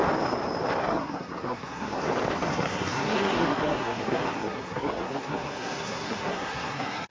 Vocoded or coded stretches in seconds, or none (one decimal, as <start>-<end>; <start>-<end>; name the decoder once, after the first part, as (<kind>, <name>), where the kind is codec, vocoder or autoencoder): 0.8-2.0 (codec, SNAC); 2.5-7.1